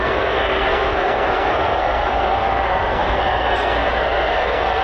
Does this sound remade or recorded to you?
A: remade